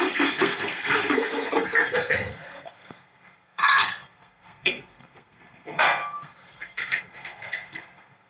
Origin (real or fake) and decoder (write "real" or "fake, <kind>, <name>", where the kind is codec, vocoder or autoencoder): fake, codec, SNAC